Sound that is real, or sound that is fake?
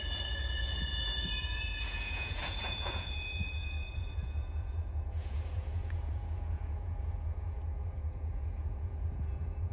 fake